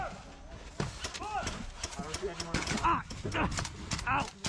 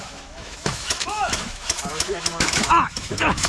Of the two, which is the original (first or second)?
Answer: first